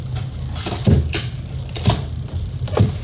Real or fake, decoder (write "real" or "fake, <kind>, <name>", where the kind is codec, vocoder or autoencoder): real